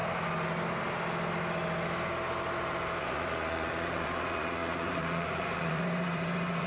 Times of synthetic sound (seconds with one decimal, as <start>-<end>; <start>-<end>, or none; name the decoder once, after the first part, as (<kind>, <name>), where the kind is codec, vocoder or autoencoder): 3.0-6.7 (vocoder, Vocos)